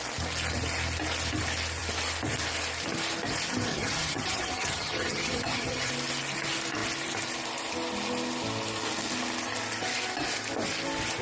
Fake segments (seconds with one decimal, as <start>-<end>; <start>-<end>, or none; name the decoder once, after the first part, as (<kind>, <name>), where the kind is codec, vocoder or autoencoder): 3.7-5.9 (vocoder, HiFi-GAN)